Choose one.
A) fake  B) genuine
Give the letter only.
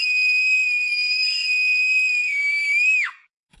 A